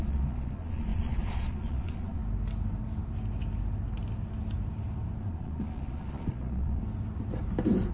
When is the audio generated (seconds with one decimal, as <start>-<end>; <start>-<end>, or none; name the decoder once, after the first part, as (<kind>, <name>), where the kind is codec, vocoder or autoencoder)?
0.0-2.2 (vocoder, Vocos); 5.2-6.8